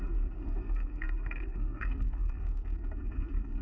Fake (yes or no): yes